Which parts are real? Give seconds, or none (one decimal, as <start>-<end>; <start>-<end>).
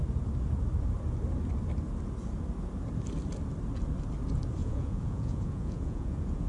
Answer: 0.0-4.6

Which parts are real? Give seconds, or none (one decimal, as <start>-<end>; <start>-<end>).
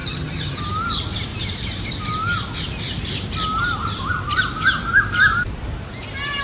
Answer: 0.6-6.4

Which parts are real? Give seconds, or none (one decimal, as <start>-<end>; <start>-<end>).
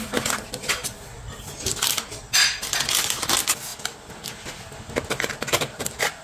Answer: 0.0-6.2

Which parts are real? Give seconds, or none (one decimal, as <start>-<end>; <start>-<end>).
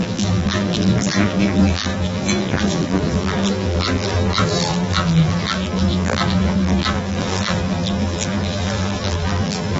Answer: none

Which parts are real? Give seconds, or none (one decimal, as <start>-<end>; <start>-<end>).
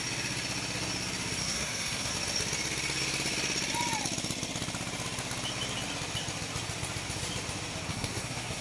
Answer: 0.0-1.4; 2.1-7.9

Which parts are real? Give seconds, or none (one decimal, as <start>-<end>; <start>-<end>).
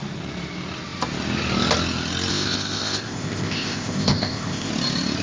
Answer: 0.0-2.3; 4.7-5.2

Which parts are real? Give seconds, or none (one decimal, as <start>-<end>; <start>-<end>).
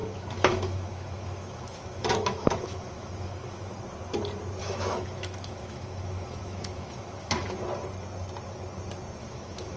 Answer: 3.7-4.6; 7.6-9.2